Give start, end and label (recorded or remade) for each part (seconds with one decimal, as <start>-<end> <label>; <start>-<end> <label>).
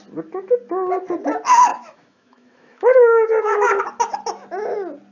0.0-1.7 recorded; 1.7-3.8 remade; 3.8-5.1 recorded